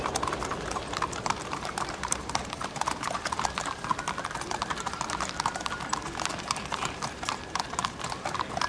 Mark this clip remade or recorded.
remade